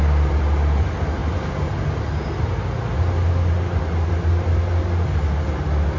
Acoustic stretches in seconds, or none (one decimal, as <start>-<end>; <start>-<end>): 0.0-6.0